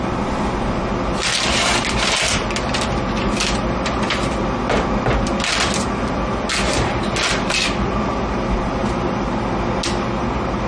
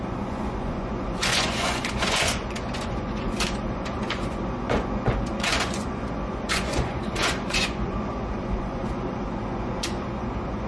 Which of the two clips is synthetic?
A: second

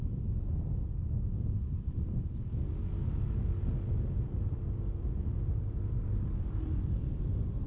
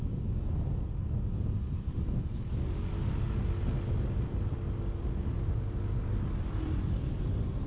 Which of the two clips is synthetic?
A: first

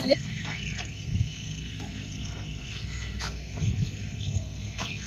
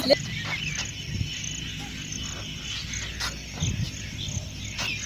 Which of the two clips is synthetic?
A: first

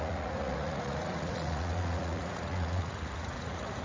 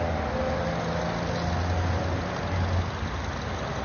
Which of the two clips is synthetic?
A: first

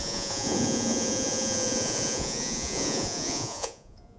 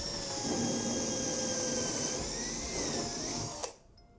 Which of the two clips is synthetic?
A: first